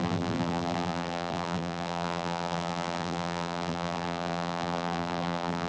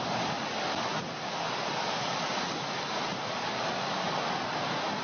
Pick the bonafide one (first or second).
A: second